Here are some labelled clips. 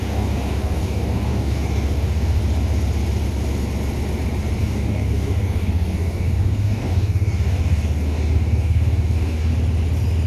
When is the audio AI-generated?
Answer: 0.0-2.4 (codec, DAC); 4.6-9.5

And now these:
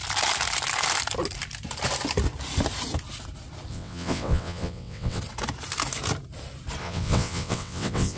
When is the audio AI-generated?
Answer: 3.7-5.2 (vocoder, WaveNeXt); 6.8-8.2

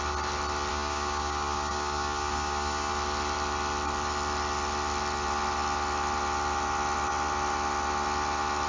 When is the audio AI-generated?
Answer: 0.7-2.9 (codec, DAC)

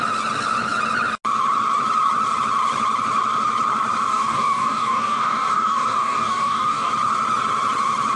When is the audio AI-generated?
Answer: 4.1-6.9 (codec, DAC)

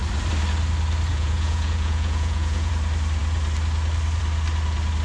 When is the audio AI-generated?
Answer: 1.1-2.7 (vocoder, Vocos)

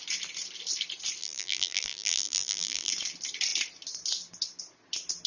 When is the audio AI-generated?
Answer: 1.2-2.9 (vocoder, BigVGAN v2)

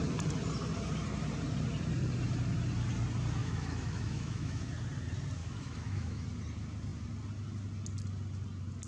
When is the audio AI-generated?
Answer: 3.4-4.7 (autoencoder, DAC-VAE); 5.4-6.2

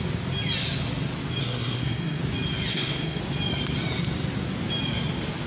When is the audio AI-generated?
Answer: 1.4-2.2 (codec, SNAC); 2.7-3.2